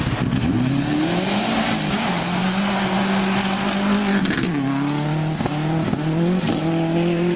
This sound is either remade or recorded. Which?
recorded